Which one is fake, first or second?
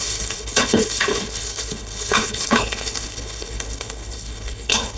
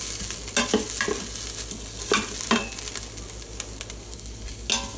first